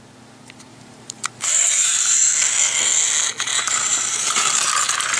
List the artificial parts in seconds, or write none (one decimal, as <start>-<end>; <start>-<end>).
0.7-2.3; 3.5-4.8